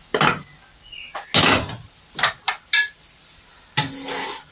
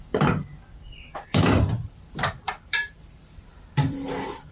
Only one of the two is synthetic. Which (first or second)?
second